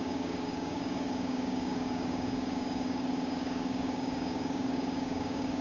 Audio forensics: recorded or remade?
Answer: remade